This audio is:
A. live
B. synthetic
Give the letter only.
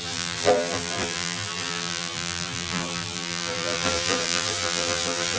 B